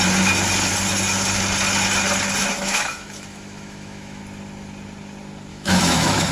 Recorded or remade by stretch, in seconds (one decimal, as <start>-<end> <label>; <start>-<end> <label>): 0.0-2.5 recorded; 2.5-4.2 remade; 4.2-5.5 recorded; 5.5-6.3 remade